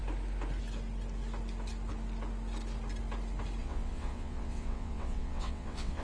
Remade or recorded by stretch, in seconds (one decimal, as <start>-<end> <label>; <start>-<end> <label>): 0.0-3.6 recorded; 3.6-6.0 remade